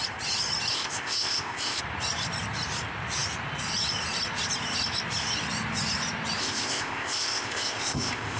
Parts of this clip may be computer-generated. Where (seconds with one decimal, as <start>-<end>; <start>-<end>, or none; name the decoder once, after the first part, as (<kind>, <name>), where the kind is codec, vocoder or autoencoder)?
0.7-1.8 (codec, ZipCodec); 6.4-8.4